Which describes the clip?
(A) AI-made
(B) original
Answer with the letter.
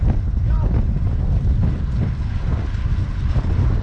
B